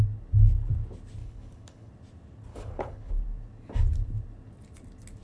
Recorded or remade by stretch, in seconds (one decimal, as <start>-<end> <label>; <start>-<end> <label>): 0.0-1.2 recorded; 1.2-1.9 remade; 1.9-2.5 recorded; 2.5-3.1 remade; 3.1-5.2 recorded